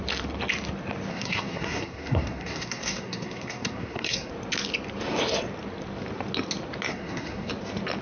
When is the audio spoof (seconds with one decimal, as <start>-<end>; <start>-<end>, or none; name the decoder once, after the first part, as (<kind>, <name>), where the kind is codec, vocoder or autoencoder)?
1.1-4.3 (codec, SNAC); 6.9-7.5